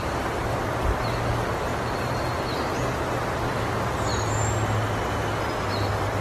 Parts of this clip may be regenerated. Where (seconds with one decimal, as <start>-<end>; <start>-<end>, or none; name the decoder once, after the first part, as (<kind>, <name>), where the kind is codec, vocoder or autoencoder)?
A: none